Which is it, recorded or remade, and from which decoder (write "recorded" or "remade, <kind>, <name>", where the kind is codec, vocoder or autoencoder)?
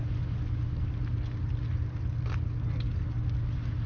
recorded